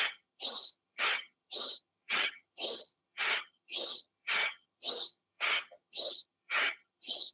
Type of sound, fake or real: fake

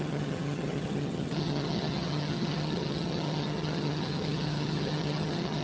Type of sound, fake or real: fake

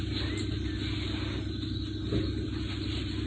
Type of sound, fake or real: real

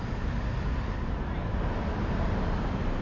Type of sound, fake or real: real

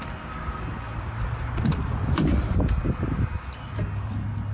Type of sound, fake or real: real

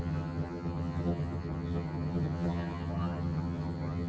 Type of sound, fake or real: fake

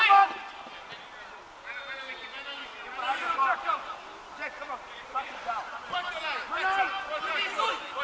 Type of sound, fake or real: real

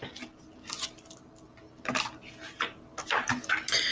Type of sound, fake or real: real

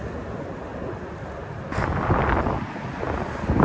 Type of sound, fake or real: real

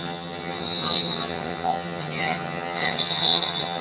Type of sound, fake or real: fake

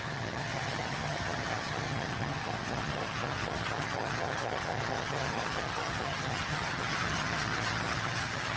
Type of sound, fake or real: fake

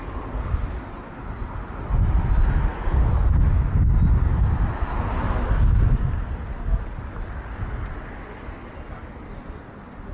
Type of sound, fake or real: real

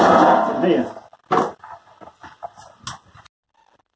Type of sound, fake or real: real